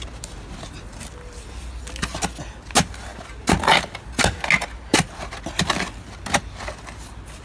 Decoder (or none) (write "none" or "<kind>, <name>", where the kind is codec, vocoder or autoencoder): none